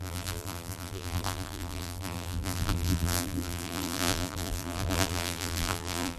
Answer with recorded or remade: remade